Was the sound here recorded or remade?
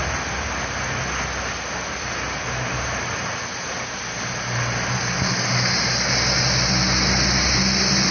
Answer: recorded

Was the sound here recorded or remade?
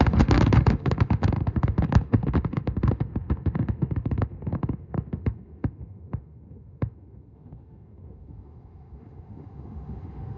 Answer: remade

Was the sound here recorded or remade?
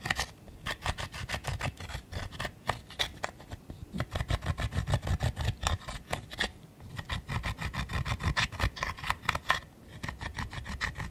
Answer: recorded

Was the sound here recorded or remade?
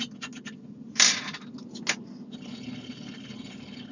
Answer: recorded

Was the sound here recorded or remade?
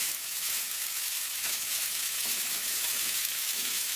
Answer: remade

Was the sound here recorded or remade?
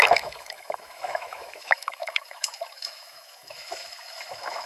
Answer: remade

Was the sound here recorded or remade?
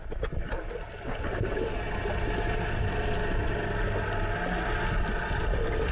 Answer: recorded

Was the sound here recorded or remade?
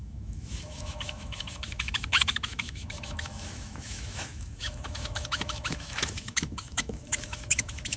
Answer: remade